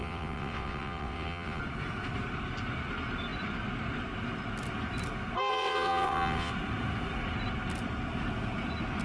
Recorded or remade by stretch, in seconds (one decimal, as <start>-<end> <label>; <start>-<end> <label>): 0.0-1.6 remade; 1.6-5.5 recorded; 5.5-6.5 remade; 6.5-9.0 recorded